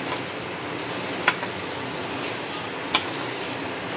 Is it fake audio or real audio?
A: real